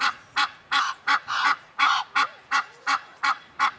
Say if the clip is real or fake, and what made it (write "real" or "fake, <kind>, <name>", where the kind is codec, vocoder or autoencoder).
fake, vocoder, Vocos